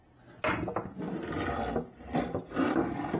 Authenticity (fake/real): real